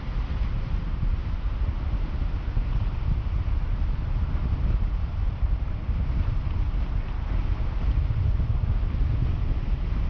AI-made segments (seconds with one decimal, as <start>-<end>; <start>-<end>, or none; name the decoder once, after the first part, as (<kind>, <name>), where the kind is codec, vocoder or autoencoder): none